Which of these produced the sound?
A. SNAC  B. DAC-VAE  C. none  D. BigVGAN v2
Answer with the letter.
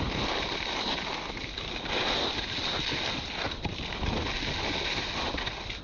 C